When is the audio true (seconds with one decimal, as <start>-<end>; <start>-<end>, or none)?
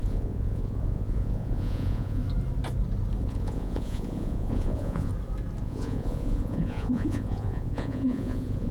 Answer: 2.2-3.2; 5.1-5.6